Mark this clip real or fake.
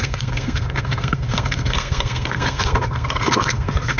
fake